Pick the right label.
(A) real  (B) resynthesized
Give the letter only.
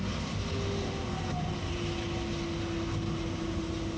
A